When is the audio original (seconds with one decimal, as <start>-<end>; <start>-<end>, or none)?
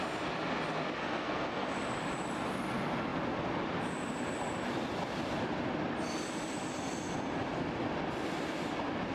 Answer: 0.0-1.0; 1.7-9.1